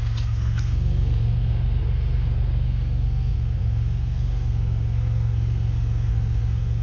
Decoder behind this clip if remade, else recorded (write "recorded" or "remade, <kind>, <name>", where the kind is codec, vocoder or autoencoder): remade, codec, SNAC